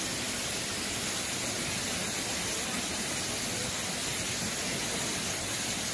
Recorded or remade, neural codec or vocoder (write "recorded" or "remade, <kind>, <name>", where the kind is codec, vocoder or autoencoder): recorded